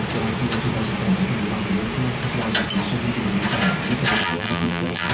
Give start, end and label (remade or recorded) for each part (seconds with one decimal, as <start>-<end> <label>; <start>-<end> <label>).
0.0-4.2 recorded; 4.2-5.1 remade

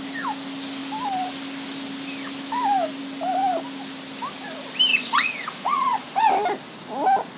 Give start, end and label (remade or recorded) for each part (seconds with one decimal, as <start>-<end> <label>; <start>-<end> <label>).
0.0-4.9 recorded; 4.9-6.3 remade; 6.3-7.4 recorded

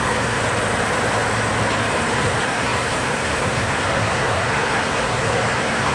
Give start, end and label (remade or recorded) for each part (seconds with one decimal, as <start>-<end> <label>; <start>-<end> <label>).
0.0-0.4 remade; 0.4-2.1 recorded; 2.1-5.9 remade